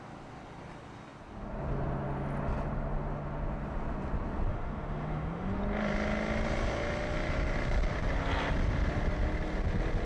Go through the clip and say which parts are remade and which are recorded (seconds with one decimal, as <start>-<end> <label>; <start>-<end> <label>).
0.0-4.5 recorded; 4.5-5.6 remade; 5.6-10.1 recorded